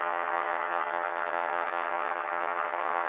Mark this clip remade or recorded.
remade